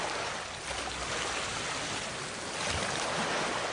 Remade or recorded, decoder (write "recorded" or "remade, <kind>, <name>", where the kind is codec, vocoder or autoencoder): recorded